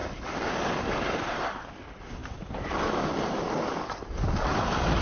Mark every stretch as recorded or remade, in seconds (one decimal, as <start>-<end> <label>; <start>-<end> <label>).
0.0-5.0 recorded